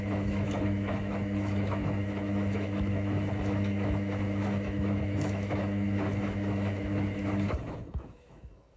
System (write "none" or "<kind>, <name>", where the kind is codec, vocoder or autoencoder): autoencoder, DAC-VAE